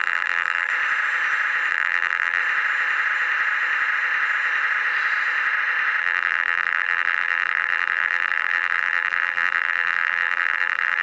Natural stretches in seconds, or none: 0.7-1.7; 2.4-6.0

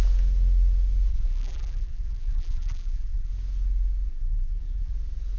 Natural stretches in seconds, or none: 0.0-1.1; 3.3-4.1; 4.9-5.4

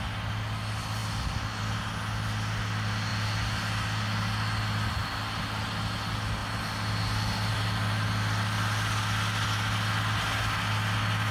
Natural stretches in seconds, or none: 0.0-11.3